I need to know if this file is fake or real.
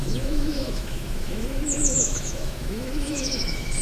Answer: fake